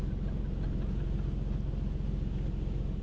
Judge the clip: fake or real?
real